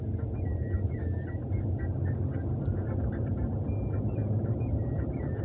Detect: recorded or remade recorded